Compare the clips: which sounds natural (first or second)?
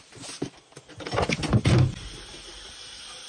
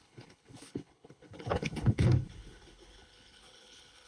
first